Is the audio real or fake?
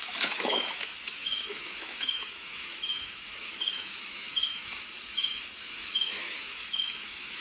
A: fake